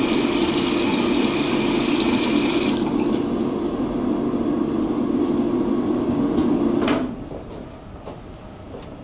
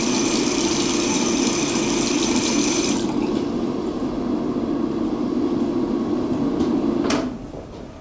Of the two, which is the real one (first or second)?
first